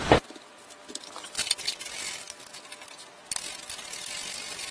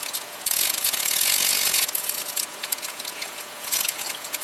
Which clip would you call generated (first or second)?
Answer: second